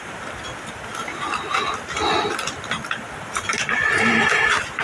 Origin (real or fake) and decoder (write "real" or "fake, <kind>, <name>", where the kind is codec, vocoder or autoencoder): real